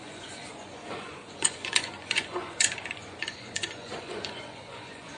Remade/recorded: remade